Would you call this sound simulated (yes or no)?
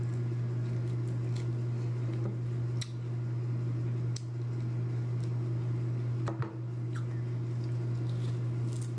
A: no